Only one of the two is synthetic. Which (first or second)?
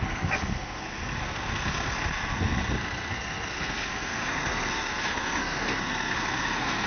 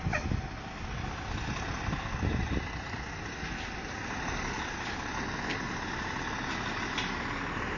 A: first